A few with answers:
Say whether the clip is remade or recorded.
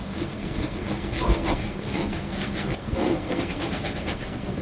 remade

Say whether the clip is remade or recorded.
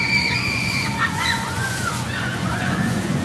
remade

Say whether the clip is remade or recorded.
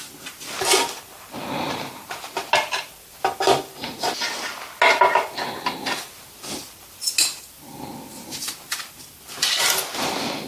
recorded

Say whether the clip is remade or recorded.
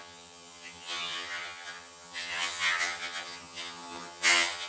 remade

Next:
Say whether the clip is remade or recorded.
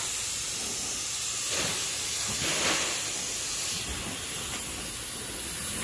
recorded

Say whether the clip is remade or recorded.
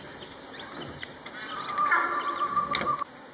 recorded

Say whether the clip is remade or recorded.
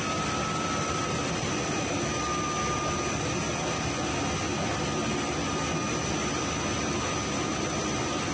recorded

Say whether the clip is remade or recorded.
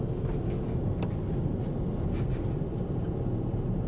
recorded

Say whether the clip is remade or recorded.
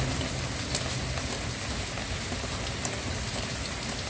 recorded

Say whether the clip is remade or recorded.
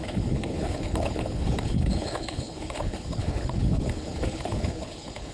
remade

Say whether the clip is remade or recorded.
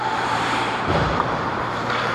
remade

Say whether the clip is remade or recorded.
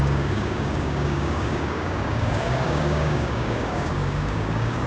remade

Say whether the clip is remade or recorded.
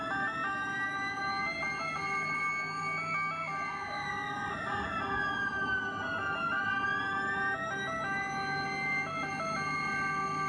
recorded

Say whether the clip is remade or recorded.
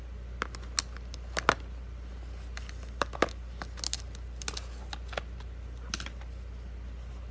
recorded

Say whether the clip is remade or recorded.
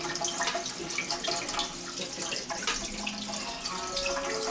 recorded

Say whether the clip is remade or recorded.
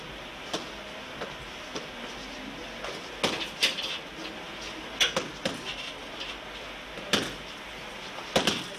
recorded